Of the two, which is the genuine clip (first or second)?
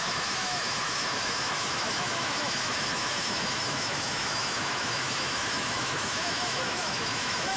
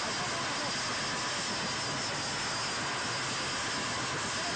second